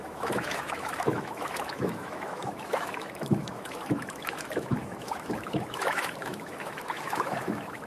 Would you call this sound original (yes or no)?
no